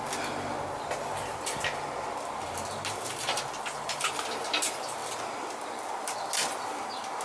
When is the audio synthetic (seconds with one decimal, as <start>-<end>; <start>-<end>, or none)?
none